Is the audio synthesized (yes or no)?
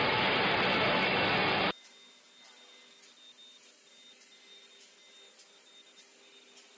no